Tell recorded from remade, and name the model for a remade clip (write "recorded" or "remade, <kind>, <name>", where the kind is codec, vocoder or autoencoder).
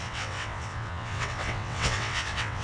remade, vocoder, WaveNeXt